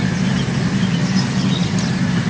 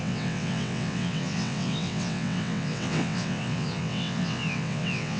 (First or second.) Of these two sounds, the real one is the first